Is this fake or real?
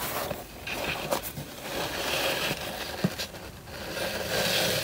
real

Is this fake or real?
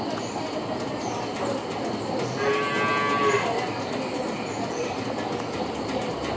real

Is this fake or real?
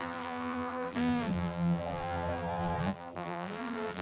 fake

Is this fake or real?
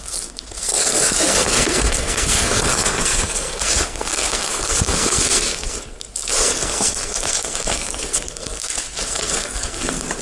fake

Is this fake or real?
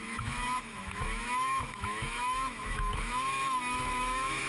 fake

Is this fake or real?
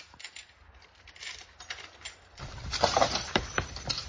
fake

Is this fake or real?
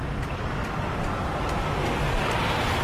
real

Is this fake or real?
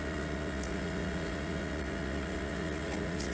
fake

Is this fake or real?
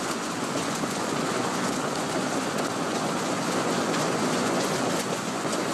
fake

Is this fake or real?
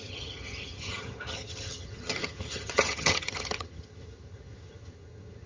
fake